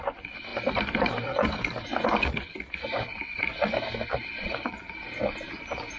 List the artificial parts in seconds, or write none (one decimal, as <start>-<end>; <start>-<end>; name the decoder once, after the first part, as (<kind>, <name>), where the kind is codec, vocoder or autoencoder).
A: none